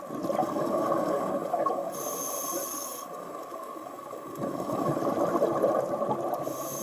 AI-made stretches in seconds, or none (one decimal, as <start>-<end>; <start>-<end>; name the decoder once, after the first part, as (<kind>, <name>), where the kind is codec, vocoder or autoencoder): 0.4-2.0 (codec, DAC); 2.6-5.0